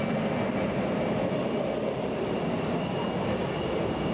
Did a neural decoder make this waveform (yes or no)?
no